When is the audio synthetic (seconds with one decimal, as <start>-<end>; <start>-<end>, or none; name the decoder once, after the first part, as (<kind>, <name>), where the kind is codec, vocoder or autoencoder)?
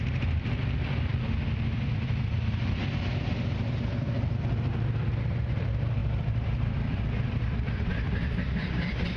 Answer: 0.0-9.2 (vocoder, BigVGAN v2)